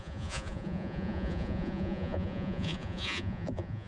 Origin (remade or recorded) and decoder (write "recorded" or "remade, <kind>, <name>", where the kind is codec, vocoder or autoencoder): remade, vocoder, Vocos